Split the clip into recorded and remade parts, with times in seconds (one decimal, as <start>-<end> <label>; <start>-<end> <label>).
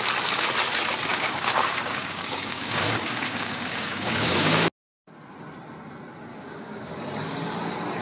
0.0-1.1 recorded; 1.1-4.7 remade; 4.7-6.3 recorded; 6.3-6.9 remade; 6.9-8.0 recorded